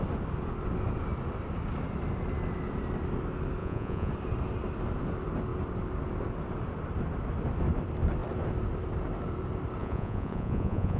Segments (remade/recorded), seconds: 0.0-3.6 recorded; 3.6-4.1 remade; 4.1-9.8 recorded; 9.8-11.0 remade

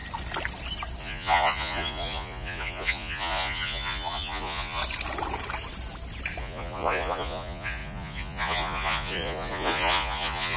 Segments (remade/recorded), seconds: 0.0-1.0 recorded; 1.0-4.8 remade; 4.8-6.4 recorded; 6.4-10.6 remade

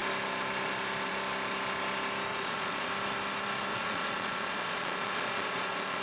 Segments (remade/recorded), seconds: 0.0-2.3 recorded; 2.3-2.9 remade; 2.9-3.7 recorded; 3.7-6.0 remade